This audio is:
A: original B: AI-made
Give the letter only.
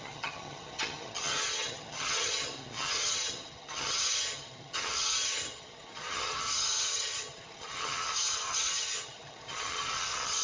B